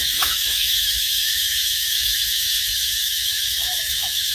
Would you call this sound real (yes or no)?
no